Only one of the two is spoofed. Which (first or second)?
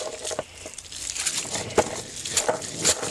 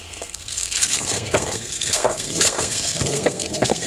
second